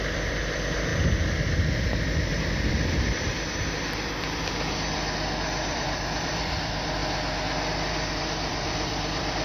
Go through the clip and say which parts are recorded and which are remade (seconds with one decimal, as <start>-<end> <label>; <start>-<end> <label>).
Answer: 0.0-0.9 remade; 0.9-2.3 recorded; 2.3-7.0 remade; 7.0-8.1 recorded; 8.1-9.4 remade